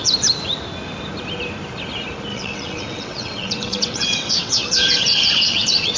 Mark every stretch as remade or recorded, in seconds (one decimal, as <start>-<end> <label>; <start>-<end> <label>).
0.0-2.3 recorded; 2.3-6.0 remade